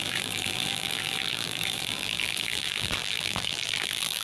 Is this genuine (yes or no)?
no